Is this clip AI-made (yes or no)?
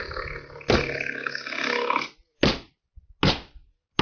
no